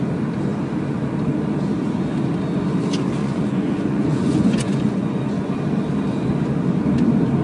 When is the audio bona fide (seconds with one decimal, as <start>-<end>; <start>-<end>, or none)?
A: 0.0-3.2; 5.5-7.4